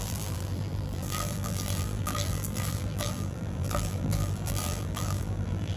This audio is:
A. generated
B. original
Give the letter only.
A